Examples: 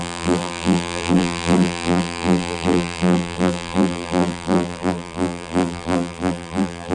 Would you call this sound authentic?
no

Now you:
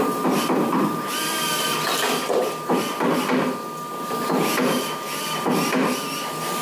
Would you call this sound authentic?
no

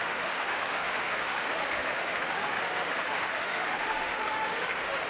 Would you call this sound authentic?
no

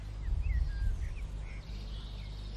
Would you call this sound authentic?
yes